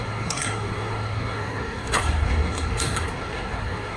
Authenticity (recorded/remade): remade